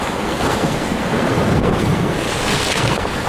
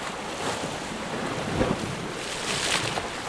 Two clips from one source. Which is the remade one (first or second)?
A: first